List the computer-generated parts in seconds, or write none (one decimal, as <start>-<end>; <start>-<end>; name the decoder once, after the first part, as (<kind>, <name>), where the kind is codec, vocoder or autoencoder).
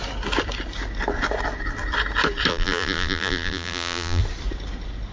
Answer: 2.5-4.2 (vocoder, BigVGAN v2)